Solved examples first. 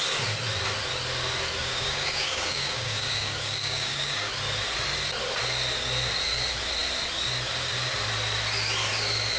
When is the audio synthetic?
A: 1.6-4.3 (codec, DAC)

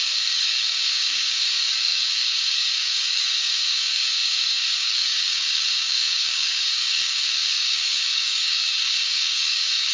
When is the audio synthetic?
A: 0.0-9.9 (codec, DAC)

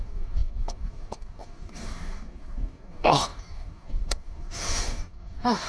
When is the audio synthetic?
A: 0.0-5.7 (codec, DAC)

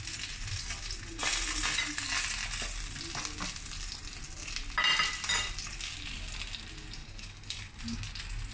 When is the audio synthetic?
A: 7.0-7.8 (codec, DAC)

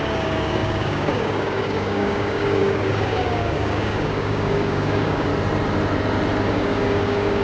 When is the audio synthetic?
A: 0.0-5.3 (codec, DAC); 6.5-7.4

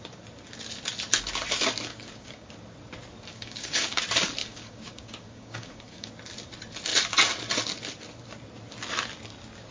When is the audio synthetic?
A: 1.9-2.5 (codec, DAC); 3.3-4.0; 4.4-6.1